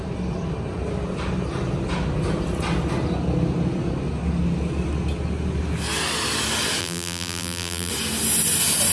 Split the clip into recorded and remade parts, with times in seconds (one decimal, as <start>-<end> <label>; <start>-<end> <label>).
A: 0.0-6.8 recorded; 6.8-7.9 remade; 7.9-8.9 recorded